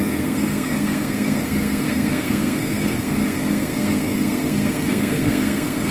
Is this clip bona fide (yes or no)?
no